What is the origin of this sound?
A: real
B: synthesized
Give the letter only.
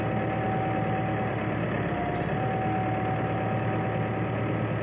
A